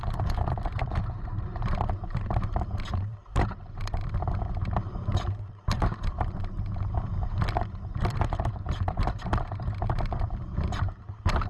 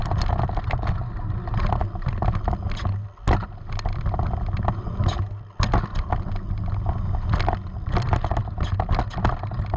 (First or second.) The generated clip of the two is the first